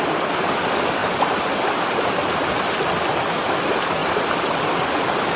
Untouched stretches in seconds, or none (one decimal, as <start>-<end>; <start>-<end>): 0.0-5.4